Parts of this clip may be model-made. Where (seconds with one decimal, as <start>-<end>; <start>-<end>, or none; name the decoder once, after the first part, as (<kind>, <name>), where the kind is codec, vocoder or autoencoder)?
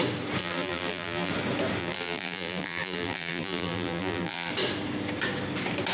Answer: 0.4-1.3 (vocoder, BigVGAN v2); 1.8-4.5